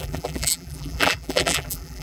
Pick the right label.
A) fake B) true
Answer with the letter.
A